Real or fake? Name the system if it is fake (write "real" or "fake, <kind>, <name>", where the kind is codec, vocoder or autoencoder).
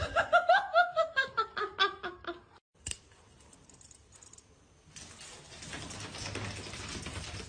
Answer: real